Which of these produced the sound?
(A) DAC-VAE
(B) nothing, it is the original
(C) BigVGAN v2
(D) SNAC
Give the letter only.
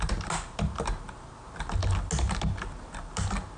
B